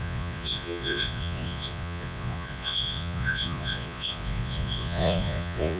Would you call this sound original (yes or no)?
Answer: no